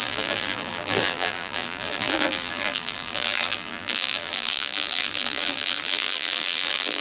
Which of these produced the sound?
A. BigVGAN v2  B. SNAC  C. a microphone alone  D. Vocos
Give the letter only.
A